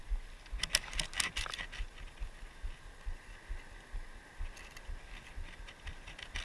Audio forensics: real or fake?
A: real